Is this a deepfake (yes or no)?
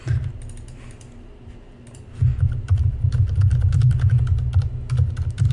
no